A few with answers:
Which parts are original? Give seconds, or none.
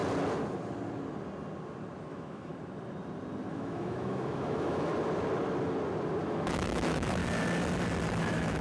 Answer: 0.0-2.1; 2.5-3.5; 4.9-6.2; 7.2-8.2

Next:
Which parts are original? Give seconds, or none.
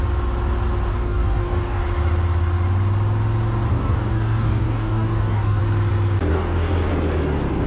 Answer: 0.0-0.9; 1.8-3.7; 5.6-6.3; 6.9-7.7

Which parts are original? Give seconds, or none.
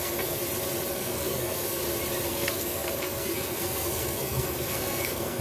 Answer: 0.4-0.9; 1.8-2.3